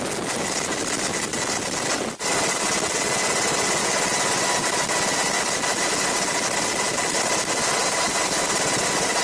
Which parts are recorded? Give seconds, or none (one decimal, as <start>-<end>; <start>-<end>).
0.0-3.8; 5.3-7.6